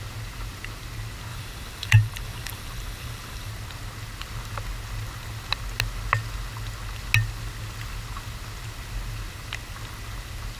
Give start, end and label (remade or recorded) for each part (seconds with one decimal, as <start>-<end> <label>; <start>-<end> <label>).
0.0-1.3 recorded; 1.3-3.5 remade; 3.5-10.6 recorded